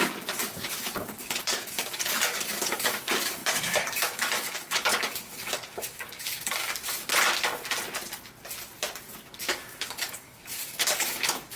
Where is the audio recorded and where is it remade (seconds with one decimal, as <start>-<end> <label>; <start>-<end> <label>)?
0.0-6.8 remade; 6.8-9.2 recorded; 9.2-11.6 remade